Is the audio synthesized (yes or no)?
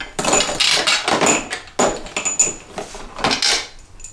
no